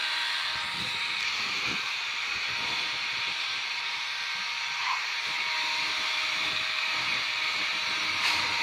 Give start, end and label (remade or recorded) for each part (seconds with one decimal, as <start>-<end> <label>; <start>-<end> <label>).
0.0-8.6 remade